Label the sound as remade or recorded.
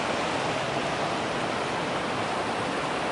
recorded